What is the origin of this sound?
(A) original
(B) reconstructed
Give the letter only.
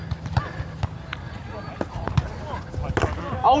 A